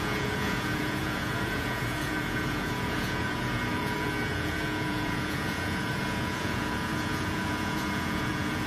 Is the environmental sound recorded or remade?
remade